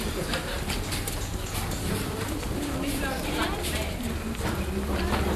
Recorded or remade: recorded